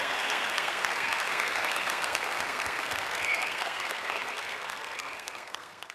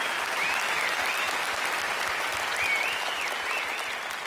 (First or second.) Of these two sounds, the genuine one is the second